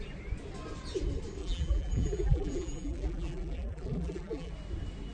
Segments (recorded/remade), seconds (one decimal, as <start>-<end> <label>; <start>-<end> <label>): 0.0-1.4 recorded; 1.4-4.5 remade; 4.5-5.1 recorded